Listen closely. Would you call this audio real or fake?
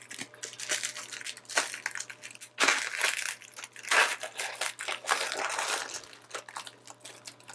real